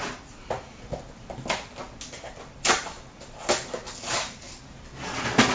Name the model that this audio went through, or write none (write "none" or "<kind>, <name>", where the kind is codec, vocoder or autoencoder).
none